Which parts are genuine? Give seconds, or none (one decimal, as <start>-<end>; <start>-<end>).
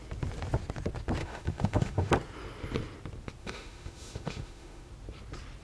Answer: 0.0-1.2; 2.1-3.4; 4.9-5.6